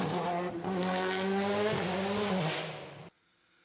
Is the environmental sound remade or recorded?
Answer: recorded